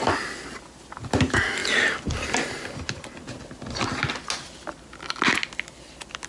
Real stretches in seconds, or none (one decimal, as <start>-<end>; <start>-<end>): 0.0-6.3